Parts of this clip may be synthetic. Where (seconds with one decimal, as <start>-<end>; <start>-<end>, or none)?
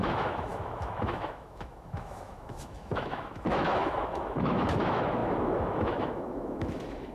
0.0-7.1